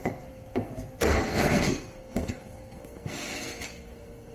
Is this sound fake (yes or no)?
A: yes